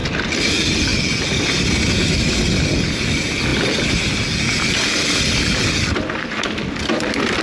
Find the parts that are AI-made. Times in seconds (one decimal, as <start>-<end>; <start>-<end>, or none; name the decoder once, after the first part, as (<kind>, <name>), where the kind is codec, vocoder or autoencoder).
none